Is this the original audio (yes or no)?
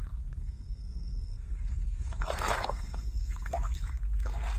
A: no